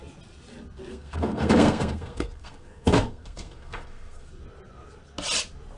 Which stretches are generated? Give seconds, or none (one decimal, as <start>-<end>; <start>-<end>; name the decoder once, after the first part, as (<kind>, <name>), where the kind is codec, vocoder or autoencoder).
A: 0.9-4.3 (codec, SNAC)